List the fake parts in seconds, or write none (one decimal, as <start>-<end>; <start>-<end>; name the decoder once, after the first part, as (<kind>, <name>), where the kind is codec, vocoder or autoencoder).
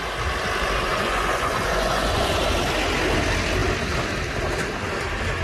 0.9-2.4 (vocoder, Vocos)